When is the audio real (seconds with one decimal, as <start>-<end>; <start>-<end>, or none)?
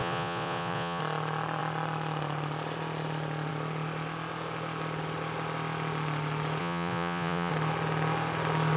1.0-6.6; 7.5-8.8